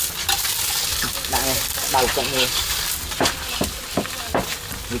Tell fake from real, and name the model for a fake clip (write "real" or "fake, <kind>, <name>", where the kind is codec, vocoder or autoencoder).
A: real